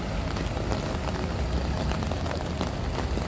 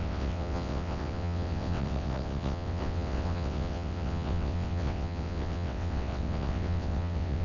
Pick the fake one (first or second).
second